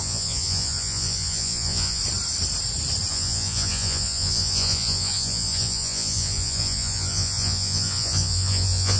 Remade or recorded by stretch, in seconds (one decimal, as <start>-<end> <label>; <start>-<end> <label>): 0.0-2.0 remade; 2.0-3.1 recorded; 3.1-9.0 remade